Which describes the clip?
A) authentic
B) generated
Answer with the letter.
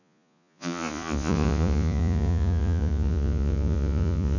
B